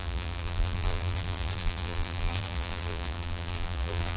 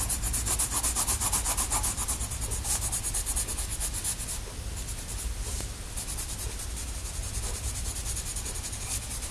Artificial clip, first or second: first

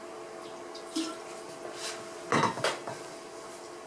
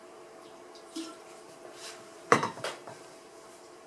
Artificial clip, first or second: second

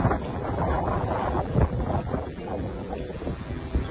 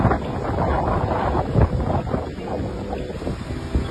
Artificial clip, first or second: first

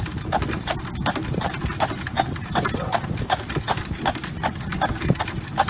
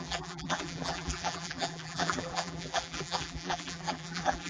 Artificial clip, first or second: second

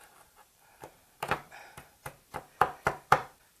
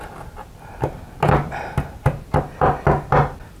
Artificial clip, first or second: first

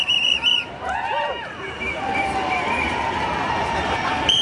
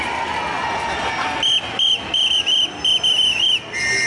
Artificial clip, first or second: first